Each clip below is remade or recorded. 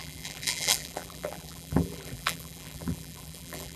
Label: remade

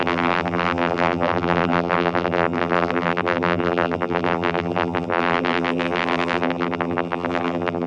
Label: remade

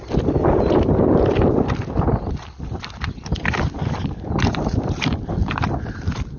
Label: recorded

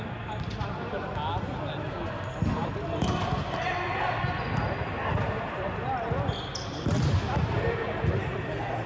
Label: recorded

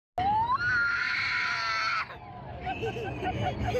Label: recorded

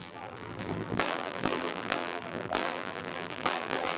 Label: remade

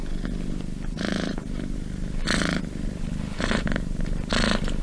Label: recorded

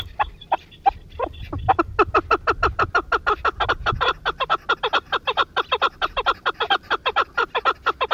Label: recorded